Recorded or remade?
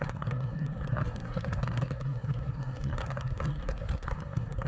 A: remade